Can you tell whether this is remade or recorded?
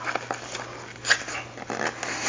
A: recorded